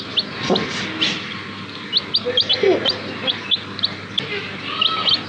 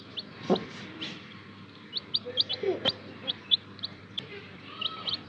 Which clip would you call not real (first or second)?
second